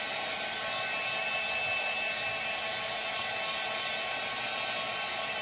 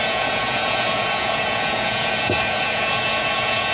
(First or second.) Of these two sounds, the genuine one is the first